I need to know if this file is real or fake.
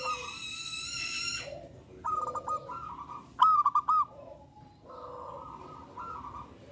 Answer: real